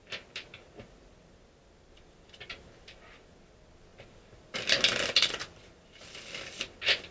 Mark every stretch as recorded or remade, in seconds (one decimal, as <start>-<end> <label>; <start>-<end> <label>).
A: 0.0-7.1 recorded